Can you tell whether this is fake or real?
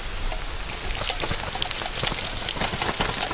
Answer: real